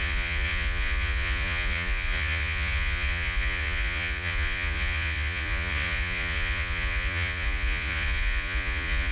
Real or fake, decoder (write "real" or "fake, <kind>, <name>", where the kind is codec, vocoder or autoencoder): fake, vocoder, Vocos